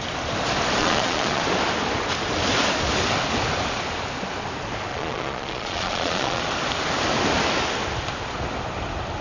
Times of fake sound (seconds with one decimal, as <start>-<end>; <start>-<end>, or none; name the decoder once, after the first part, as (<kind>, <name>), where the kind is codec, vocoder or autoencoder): 0.8-1.4 (vocoder, Vocos); 4.9-6.4

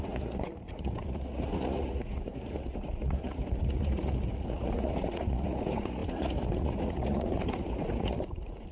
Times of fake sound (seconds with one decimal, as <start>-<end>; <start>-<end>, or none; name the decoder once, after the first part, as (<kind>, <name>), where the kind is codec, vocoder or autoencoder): 0.0-8.7 (vocoder, Vocos)

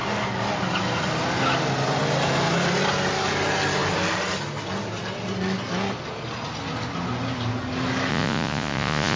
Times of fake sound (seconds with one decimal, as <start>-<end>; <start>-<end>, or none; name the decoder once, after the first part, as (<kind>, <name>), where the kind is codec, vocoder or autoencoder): 8.1-9.2 (vocoder, Vocos)